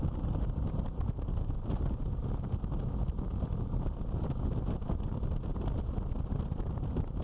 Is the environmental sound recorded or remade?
recorded